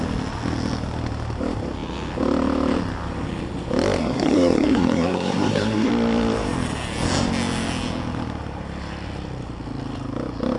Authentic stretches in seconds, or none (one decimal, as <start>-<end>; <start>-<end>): 0.0-4.0; 5.9-10.6